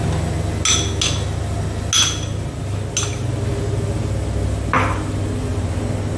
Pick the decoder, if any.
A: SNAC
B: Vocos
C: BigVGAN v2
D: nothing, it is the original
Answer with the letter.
D